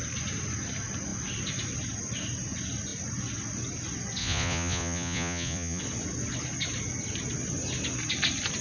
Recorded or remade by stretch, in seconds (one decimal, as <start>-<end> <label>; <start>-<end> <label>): 0.0-4.2 recorded; 4.2-5.8 remade; 5.8-8.6 recorded